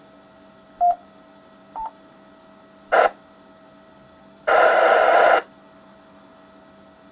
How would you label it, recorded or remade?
remade